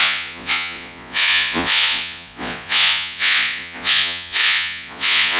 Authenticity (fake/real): fake